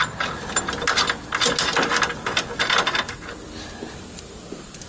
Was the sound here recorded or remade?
recorded